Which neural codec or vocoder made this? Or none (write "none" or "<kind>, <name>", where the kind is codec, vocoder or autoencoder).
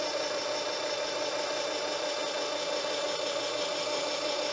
none